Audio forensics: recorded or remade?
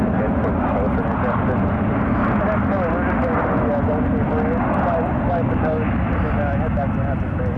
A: recorded